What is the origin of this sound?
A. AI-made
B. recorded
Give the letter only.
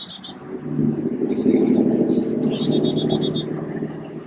B